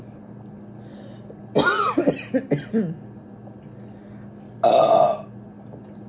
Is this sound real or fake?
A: real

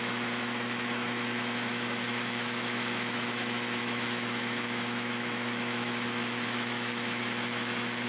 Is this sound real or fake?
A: fake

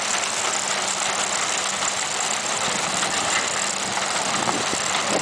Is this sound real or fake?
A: fake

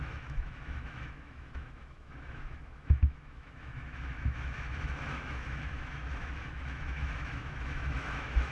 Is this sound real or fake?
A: fake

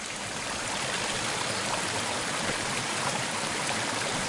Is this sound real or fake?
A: fake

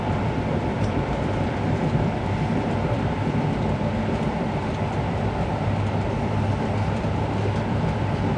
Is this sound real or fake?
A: fake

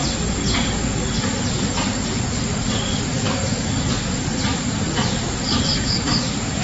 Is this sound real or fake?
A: real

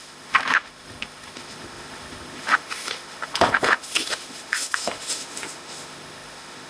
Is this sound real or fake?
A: fake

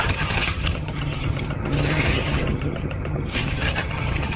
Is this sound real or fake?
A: fake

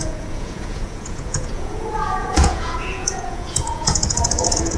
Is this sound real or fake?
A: fake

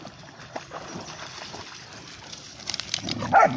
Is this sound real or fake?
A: real